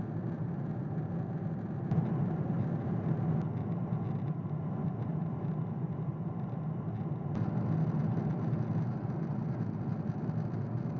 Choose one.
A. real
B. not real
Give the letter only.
A